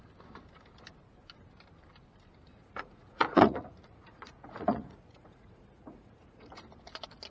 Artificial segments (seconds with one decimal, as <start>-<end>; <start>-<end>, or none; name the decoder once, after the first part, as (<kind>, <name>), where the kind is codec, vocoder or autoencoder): 2.5-6.6 (vocoder, Vocos)